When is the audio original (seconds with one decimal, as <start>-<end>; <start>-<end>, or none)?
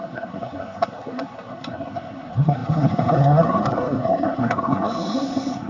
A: none